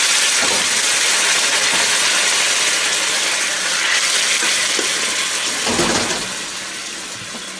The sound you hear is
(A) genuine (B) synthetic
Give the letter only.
A